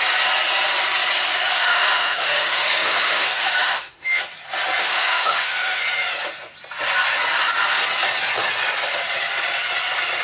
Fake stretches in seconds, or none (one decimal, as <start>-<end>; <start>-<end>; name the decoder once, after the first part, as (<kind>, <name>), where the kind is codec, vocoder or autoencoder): 1.5-4.2 (autoencoder, DAC-VAE); 4.8-5.8